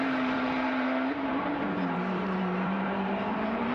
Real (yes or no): no